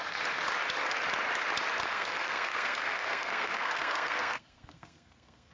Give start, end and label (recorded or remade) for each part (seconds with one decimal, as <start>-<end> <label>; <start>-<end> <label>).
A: 0.0-1.9 recorded; 1.9-5.5 remade